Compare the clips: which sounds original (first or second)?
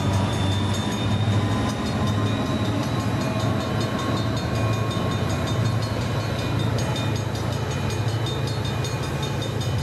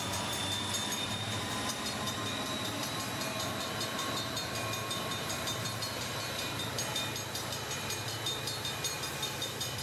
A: first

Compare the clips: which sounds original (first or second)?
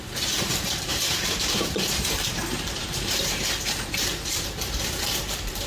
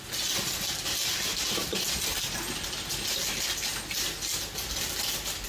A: second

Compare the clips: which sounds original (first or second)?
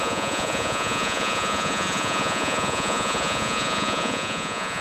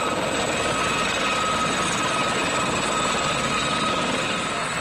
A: second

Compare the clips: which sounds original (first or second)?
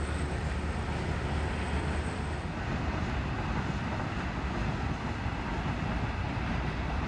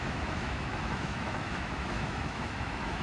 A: first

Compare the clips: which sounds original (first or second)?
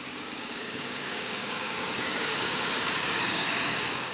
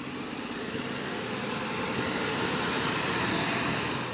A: second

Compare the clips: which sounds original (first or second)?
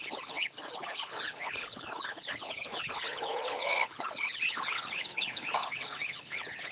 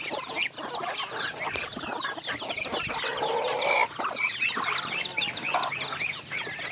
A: second